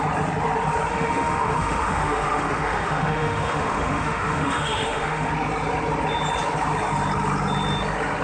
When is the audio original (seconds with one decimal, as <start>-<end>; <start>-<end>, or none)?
0.0-0.9; 5.3-8.2